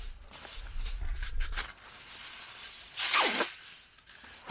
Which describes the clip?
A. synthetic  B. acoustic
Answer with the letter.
B